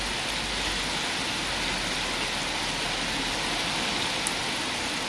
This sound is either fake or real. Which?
real